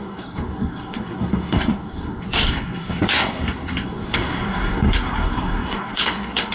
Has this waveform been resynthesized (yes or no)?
yes